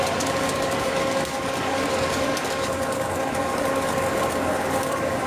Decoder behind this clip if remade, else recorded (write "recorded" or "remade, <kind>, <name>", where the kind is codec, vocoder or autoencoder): remade, codec, DAC